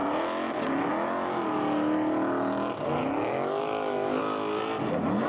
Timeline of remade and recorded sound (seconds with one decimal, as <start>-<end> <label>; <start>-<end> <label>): 0.0-3.0 recorded; 3.0-4.2 remade; 4.2-5.3 recorded